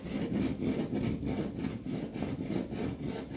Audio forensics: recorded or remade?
recorded